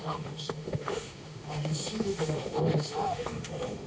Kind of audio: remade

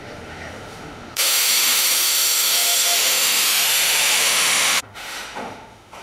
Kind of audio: remade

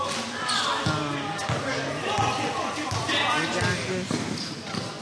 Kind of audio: recorded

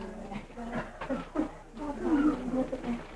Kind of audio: recorded